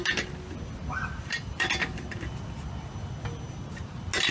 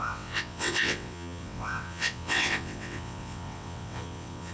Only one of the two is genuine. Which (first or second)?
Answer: first